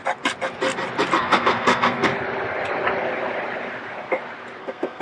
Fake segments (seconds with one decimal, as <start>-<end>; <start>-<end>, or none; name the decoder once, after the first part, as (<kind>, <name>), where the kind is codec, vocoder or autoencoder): 1.2-2.1 (codec, SNAC); 4.6-5.0